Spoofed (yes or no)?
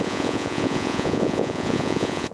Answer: yes